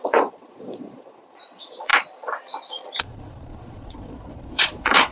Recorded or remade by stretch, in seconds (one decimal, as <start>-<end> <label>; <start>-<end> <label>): 0.0-1.9 remade; 1.9-3.0 recorded; 3.0-5.1 remade